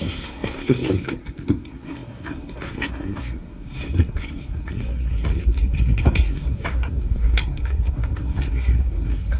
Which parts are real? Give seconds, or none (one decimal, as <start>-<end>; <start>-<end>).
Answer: none